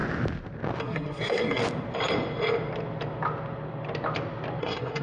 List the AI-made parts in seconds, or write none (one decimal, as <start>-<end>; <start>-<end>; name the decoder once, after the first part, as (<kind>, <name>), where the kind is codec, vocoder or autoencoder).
0.8-1.6 (codec, SNAC); 4.6-5.0